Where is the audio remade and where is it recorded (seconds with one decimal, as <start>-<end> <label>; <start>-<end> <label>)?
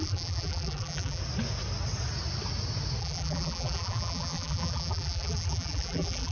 0.0-1.2 remade; 1.2-3.0 recorded; 3.0-6.3 remade